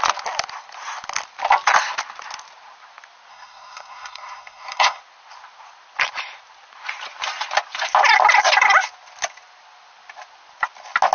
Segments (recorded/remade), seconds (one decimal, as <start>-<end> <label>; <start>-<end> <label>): 0.0-3.3 recorded; 3.3-5.0 remade; 5.0-11.1 recorded